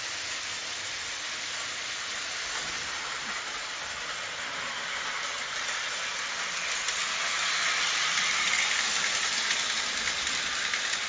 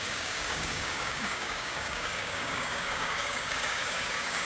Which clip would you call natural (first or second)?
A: first